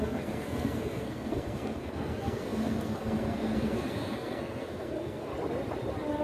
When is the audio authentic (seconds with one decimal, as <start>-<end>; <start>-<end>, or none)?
5.3-6.2